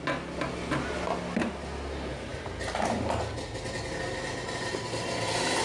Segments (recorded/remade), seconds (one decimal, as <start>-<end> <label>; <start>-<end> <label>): 0.0-5.6 recorded